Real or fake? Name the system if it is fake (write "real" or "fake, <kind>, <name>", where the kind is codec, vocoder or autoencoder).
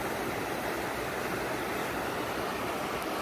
real